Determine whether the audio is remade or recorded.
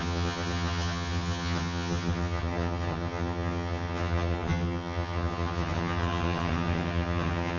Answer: remade